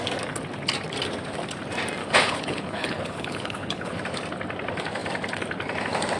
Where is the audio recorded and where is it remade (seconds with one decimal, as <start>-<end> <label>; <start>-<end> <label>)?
0.0-2.0 recorded; 2.0-4.0 remade; 4.0-6.2 recorded